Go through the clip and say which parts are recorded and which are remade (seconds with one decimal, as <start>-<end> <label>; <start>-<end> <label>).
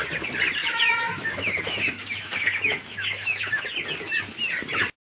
0.0-0.6 recorded; 0.6-3.6 remade; 3.6-5.0 recorded